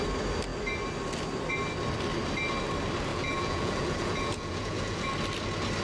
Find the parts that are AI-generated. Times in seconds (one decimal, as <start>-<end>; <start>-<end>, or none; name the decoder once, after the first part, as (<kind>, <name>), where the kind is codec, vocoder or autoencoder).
3.1-5.1 (vocoder, Vocos)